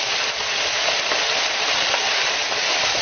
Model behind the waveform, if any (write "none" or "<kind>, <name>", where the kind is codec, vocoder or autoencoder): none